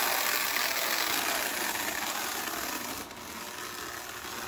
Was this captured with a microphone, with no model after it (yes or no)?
yes